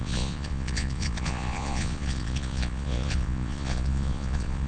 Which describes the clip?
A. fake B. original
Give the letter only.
A